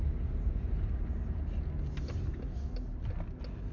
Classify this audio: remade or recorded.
recorded